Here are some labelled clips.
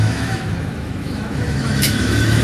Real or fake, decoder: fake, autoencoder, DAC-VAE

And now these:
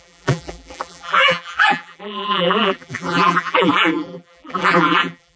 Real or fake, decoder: fake, vocoder, BigVGAN v2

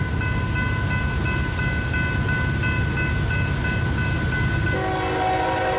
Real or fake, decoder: real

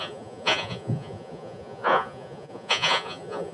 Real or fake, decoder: fake, vocoder, Vocos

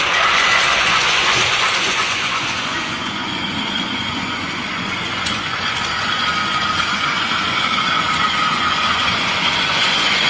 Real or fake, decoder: fake, vocoder, Vocos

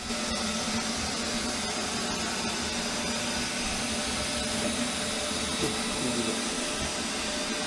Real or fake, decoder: real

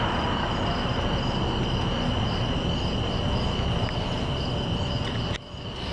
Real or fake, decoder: real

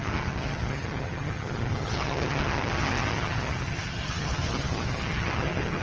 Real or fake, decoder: fake, vocoder, HiFi-GAN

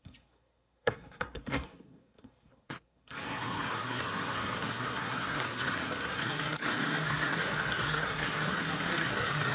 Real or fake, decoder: fake, codec, SNAC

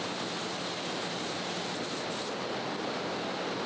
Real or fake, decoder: real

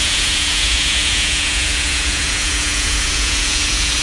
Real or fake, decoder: fake, vocoder, Vocos